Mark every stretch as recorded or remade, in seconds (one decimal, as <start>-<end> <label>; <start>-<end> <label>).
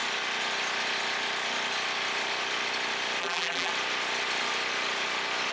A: 0.0-3.2 recorded; 3.2-3.7 remade; 3.7-5.5 recorded